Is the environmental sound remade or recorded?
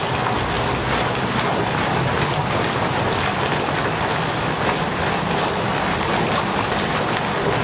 recorded